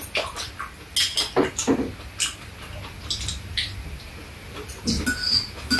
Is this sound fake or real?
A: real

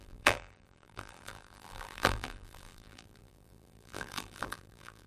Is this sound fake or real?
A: fake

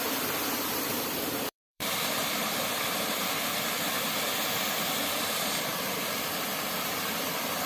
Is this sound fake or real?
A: fake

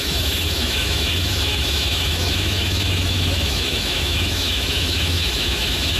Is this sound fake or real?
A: fake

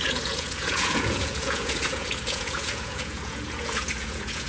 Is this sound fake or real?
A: fake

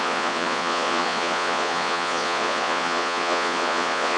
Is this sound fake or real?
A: fake